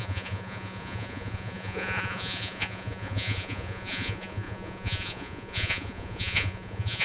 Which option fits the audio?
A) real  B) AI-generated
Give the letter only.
B